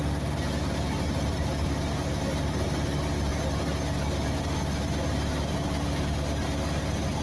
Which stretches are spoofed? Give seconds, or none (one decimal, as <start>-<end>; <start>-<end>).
none